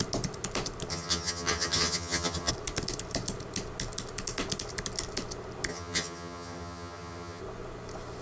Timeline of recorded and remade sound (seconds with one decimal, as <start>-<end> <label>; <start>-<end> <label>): 0.0-0.9 recorded; 0.9-2.5 remade; 2.5-5.7 recorded; 5.7-7.4 remade; 7.4-8.2 recorded